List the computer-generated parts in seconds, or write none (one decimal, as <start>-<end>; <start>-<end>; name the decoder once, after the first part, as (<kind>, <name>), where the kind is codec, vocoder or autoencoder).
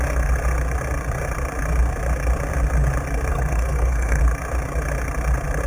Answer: 3.3-4.2 (codec, SNAC)